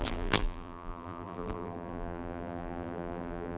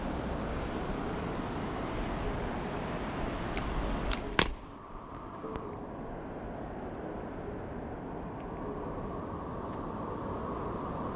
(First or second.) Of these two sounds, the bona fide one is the second